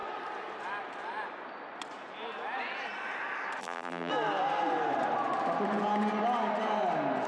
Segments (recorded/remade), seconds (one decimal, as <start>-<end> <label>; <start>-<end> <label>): 0.0-3.6 recorded; 3.6-4.1 remade; 4.1-7.3 recorded